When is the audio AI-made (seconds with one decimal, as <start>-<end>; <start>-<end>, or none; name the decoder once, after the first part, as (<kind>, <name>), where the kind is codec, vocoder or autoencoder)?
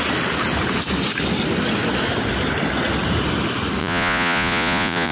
3.8-5.1 (vocoder, Vocos)